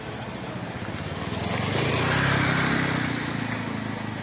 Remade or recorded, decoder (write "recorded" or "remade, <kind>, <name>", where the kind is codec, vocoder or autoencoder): recorded